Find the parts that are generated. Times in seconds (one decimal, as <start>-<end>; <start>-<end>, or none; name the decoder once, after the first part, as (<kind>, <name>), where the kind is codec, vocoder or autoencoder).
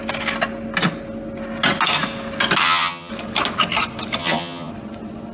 2.6-3.1 (vocoder, HiFi-GAN); 4.2-4.7